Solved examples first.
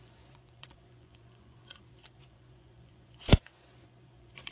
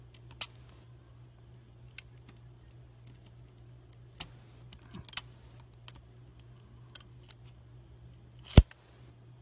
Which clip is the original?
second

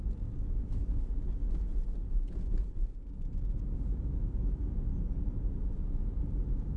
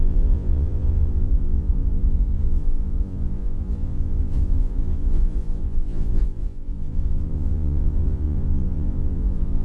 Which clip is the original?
first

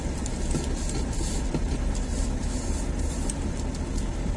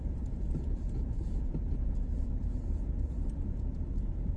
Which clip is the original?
first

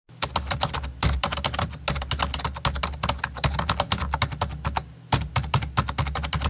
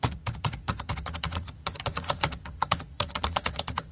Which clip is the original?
first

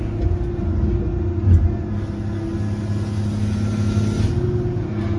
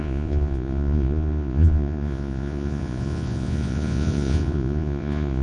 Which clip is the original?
first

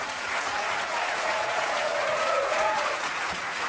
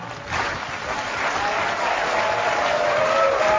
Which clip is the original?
second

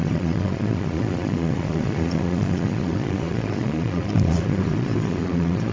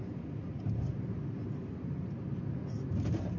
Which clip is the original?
second